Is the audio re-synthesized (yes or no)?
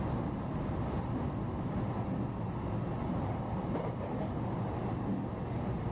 no